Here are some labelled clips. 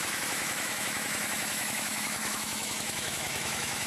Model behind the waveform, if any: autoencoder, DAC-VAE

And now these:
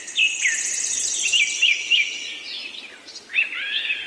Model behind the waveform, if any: none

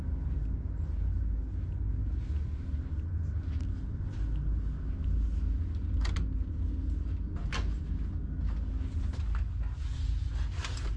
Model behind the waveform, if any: none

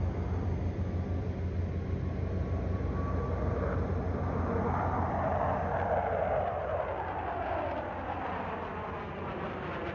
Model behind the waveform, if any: none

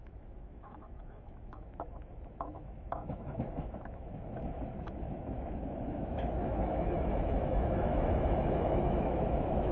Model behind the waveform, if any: autoencoder, DAC-VAE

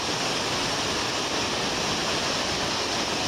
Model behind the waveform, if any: none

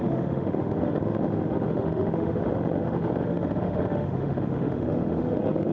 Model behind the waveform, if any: autoencoder, DAC-VAE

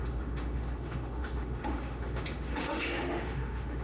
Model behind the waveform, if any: autoencoder, DAC-VAE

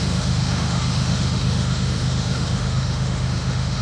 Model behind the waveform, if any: autoencoder, DAC-VAE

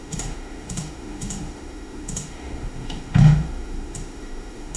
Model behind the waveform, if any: autoencoder, DAC-VAE